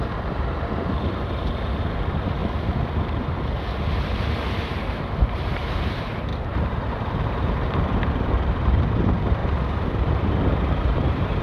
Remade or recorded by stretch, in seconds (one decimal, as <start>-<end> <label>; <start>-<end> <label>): 0.0-2.4 remade; 2.4-4.6 recorded; 4.6-11.4 remade